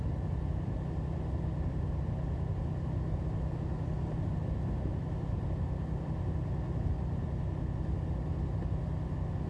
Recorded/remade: recorded